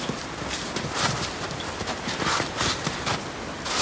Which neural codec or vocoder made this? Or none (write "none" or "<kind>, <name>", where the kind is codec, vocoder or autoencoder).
none